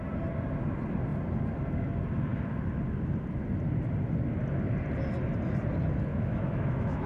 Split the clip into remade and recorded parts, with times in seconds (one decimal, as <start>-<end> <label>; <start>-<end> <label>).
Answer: 0.0-6.1 recorded; 6.1-7.1 remade